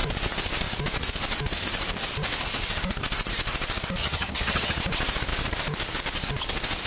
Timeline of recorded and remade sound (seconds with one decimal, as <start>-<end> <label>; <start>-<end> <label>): 0.0-4.0 recorded; 4.0-4.8 remade; 4.8-6.9 recorded